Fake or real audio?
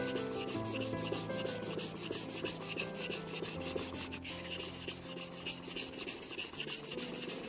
real